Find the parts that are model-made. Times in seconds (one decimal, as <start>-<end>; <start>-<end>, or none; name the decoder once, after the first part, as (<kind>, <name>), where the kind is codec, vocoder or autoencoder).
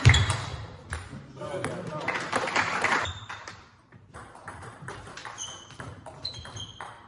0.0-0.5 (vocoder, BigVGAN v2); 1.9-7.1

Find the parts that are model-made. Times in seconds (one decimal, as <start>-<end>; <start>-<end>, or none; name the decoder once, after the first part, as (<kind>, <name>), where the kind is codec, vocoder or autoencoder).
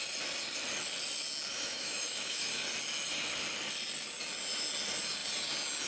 1.5-2.5 (autoencoder, DAC-VAE)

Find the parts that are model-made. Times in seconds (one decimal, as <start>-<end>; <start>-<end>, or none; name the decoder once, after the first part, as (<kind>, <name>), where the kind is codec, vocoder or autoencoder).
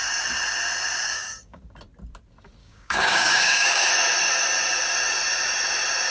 1.0-1.6 (codec, DAC); 2.6-3.9